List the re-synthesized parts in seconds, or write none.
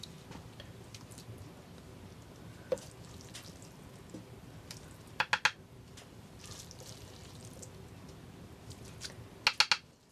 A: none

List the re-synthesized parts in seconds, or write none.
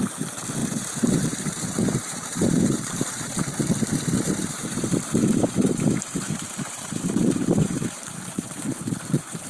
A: 0.6-3.5 (vocoder, BigVGAN v2); 4.4-9.5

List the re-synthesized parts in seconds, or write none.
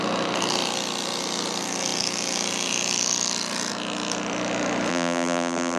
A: 4.9-5.8 (vocoder, BigVGAN v2)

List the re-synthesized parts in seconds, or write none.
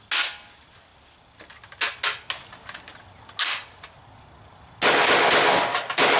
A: none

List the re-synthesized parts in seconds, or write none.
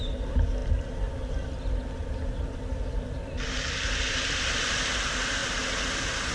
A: 0.0-0.6 (vocoder, BigVGAN v2); 4.4-5.4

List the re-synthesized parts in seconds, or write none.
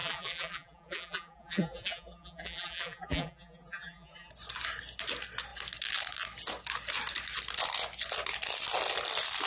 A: 0.0-4.3 (vocoder, BigVGAN v2)